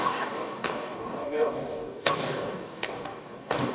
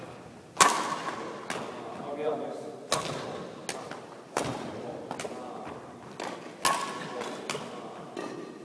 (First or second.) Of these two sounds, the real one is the second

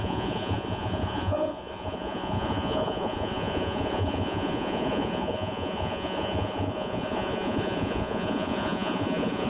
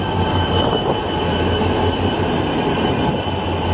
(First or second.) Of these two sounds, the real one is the second